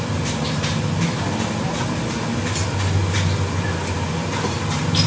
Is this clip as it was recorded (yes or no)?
yes